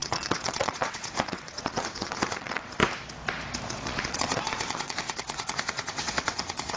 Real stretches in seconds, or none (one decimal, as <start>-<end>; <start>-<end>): 2.8-3.7